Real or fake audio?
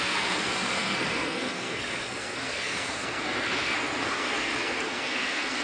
fake